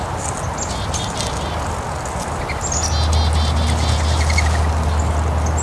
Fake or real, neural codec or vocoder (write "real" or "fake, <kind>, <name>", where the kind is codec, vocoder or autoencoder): real